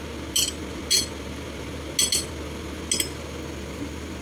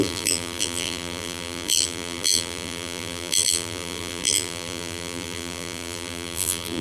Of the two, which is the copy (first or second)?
second